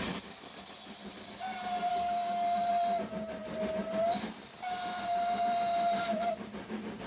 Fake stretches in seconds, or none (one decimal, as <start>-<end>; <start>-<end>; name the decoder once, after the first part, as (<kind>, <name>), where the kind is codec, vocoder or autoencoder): 1.9-2.7 (codec, DAC)